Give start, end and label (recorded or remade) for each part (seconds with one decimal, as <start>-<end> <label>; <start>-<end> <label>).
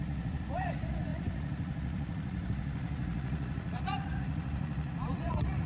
0.0-5.7 remade